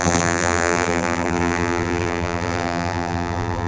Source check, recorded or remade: remade